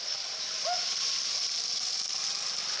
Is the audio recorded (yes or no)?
yes